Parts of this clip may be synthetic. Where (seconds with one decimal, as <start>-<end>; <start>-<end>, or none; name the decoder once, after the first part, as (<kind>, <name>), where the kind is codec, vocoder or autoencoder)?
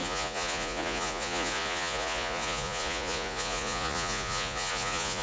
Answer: 0.0-5.2 (vocoder, Vocos)